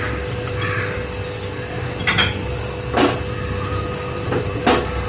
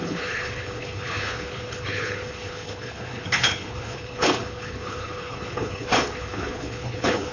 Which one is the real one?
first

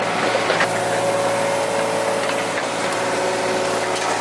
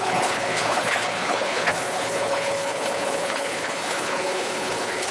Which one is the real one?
first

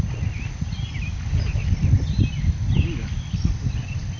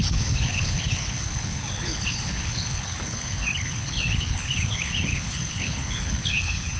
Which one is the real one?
first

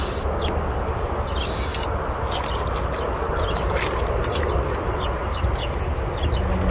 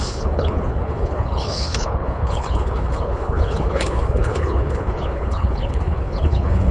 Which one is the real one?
first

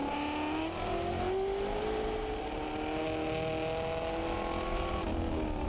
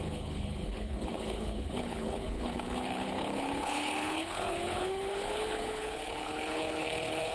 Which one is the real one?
first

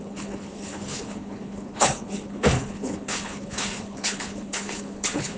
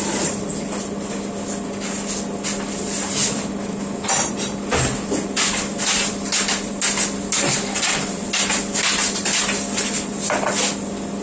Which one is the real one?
second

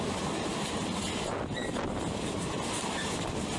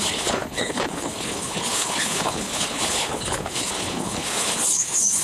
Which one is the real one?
first